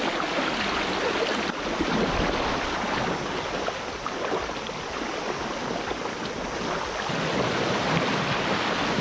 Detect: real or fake real